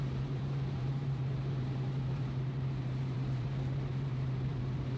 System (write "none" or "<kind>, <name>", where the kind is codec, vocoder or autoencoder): vocoder, BigVGAN v2